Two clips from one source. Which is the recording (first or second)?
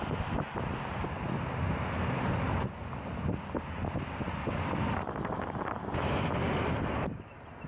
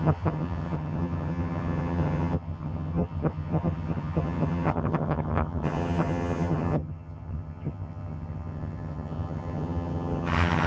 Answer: first